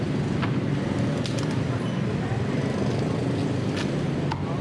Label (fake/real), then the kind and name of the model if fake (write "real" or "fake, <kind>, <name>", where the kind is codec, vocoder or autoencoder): real